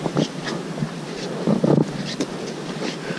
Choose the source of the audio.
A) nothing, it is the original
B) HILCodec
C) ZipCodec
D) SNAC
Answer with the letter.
A